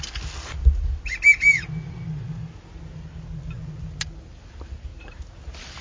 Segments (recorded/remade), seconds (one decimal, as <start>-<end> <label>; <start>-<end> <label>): 0.0-5.8 recorded